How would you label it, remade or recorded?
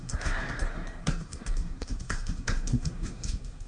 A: remade